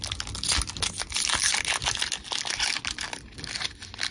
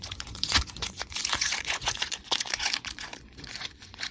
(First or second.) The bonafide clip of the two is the first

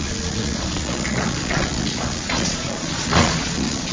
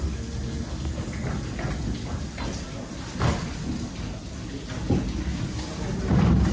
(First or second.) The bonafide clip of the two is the second